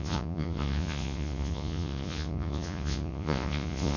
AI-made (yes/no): yes